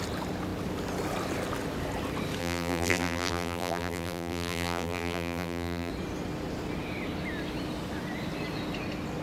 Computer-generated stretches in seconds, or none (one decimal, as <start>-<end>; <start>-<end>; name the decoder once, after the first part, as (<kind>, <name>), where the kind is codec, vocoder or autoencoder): 2.4-5.9 (vocoder, BigVGAN v2)